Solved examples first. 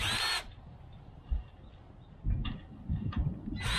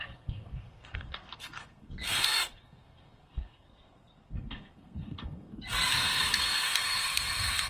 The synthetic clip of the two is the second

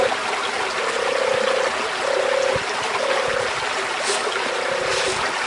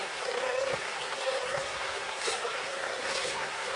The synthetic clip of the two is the second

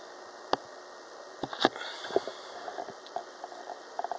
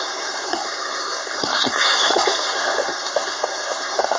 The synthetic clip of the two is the second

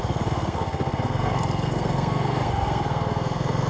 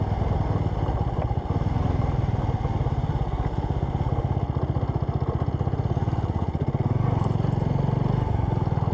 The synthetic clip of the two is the first